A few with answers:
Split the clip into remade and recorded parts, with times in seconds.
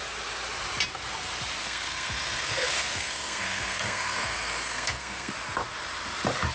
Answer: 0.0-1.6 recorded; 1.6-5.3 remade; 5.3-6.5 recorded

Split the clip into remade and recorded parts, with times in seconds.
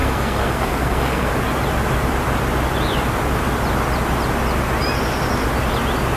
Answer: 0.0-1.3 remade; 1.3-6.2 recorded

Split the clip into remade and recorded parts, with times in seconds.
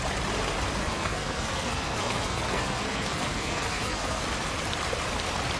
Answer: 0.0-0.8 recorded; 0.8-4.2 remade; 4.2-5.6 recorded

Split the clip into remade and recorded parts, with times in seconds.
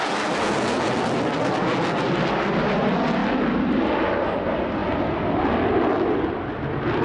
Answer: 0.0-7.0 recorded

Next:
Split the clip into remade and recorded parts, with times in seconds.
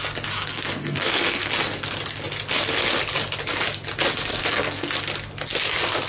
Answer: 0.0-0.4 recorded; 0.4-1.5 remade; 1.5-4.3 recorded; 4.3-4.9 remade; 4.9-6.1 recorded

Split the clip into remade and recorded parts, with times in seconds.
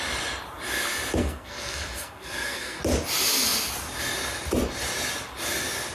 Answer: 0.0-1.2 recorded; 1.2-2.8 remade; 2.8-5.9 recorded